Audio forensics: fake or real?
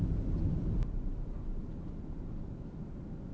real